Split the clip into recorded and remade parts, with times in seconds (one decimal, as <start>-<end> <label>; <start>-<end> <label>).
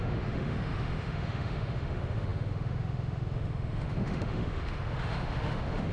0.0-5.9 remade